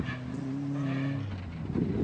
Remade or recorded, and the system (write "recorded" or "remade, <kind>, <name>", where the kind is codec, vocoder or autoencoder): recorded